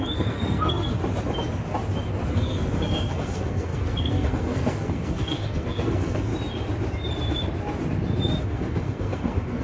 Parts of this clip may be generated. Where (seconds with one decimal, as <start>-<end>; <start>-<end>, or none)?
0.0-1.0; 2.3-6.3; 8.4-9.6